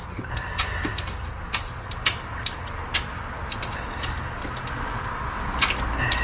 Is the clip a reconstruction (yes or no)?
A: no